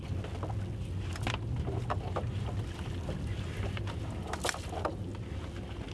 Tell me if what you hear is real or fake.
real